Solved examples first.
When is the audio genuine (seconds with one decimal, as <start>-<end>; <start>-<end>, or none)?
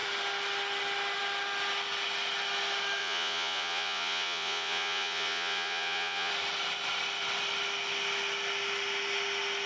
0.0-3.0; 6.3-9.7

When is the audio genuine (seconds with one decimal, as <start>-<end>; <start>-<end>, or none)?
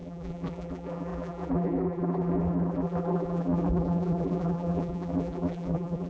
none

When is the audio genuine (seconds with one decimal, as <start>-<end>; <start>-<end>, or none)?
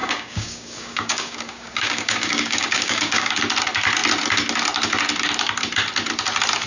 3.4-6.7